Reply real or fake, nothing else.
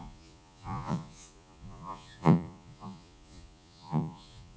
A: fake